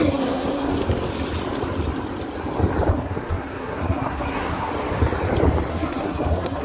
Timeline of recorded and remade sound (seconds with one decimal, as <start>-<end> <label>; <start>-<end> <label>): 0.0-0.8 remade; 0.8-2.9 recorded; 2.9-4.7 remade; 4.7-5.7 recorded; 5.7-6.6 remade